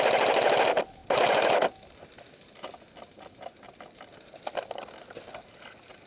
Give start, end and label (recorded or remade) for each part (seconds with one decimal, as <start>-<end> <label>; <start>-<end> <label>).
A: 0.0-6.1 recorded